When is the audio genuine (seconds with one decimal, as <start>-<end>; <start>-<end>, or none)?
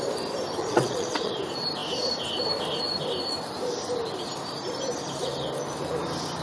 0.0-0.6; 1.3-6.4